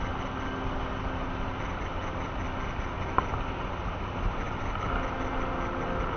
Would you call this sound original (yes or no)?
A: yes